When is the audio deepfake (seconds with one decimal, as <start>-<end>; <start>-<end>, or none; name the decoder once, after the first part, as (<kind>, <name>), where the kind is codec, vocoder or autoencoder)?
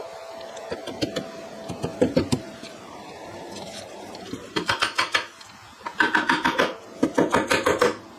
1.9-4.8 (vocoder, BigVGAN v2)